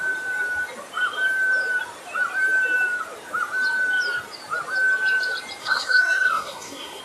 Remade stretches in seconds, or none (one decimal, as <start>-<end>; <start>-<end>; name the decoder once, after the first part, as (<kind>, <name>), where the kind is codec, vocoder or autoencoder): 5.6-7.0 (codec, SNAC)